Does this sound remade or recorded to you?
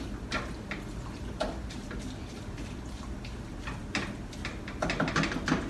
recorded